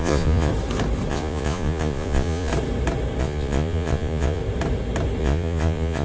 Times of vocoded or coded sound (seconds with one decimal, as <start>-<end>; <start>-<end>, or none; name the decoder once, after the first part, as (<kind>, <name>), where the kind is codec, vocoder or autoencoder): 0.0-0.5 (vocoder, Vocos); 1.1-2.5; 3.2-4.4; 5.2-6.0